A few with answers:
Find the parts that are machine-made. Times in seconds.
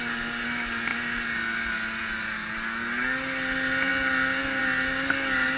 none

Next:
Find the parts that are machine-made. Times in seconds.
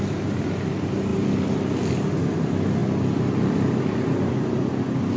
none